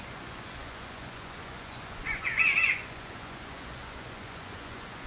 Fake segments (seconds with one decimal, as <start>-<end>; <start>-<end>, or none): 0.0-5.1